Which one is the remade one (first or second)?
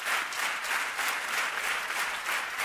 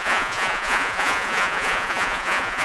second